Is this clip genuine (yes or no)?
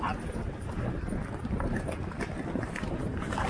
yes